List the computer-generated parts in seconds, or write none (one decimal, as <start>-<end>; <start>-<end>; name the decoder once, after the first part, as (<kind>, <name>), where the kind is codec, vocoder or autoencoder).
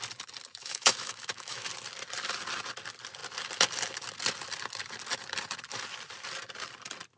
0.6-1.7 (autoencoder, DAC-VAE)